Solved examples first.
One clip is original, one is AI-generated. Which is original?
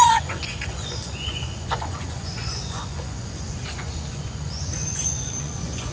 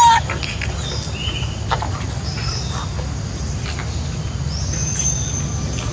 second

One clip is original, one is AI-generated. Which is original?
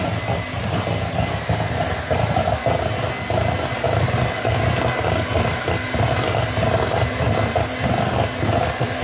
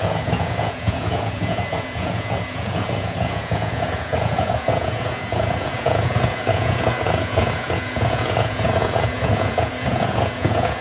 first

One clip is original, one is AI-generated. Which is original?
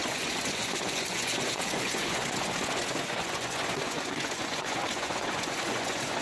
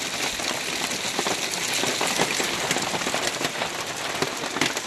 second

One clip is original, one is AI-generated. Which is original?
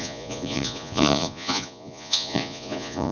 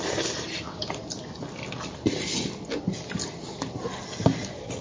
second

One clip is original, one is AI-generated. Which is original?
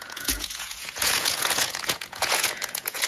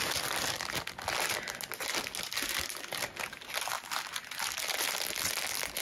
second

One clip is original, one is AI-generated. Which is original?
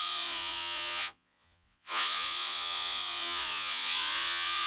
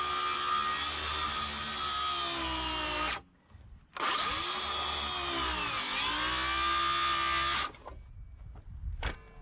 second